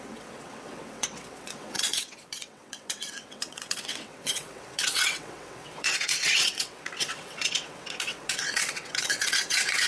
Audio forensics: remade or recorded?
remade